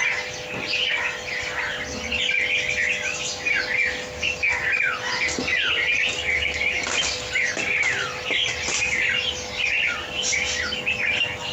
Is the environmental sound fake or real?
real